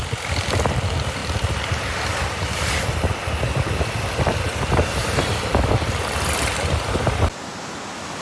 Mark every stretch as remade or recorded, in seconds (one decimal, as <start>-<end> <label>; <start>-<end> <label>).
0.0-8.2 recorded